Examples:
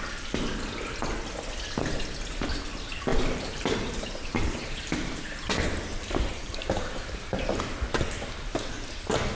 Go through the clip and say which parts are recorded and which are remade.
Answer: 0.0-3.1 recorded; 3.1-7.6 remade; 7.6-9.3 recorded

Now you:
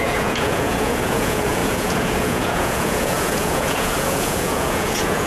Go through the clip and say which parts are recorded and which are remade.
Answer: 0.0-5.3 remade

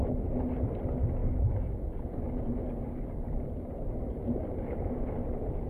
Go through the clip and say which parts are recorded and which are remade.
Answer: 0.0-5.7 recorded

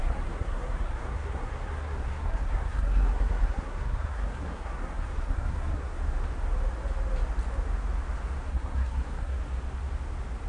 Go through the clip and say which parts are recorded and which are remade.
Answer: 0.0-6.0 remade; 6.0-8.5 recorded; 8.5-9.4 remade; 9.4-10.5 recorded

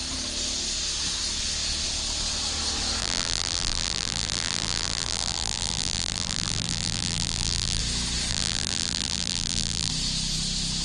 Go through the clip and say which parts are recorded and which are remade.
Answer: 0.0-3.0 recorded; 3.0-7.8 remade; 7.8-8.3 recorded; 8.3-9.9 remade; 9.9-10.8 recorded

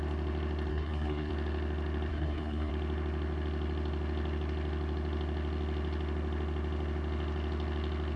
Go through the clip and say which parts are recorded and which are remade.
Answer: 0.0-0.7 recorded; 0.7-1.3 remade; 1.3-2.1 recorded; 2.1-2.7 remade; 2.7-8.2 recorded